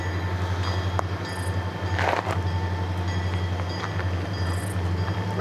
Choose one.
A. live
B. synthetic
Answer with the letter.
A